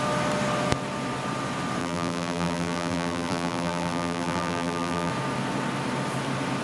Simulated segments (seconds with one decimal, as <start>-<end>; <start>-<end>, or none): 1.8-5.1